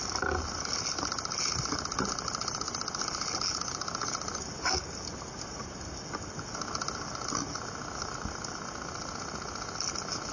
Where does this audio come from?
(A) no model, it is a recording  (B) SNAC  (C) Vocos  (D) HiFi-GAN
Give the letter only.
A